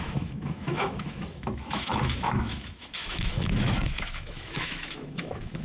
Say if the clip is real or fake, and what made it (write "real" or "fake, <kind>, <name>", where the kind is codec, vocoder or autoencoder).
fake, autoencoder, DAC-VAE